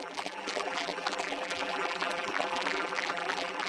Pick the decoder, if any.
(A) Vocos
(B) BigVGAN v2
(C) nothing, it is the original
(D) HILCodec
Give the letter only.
B